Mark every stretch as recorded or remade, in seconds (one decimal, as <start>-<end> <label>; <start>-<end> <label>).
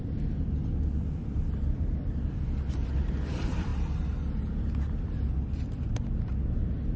0.0-3.7 remade; 3.7-5.5 recorded; 5.5-7.0 remade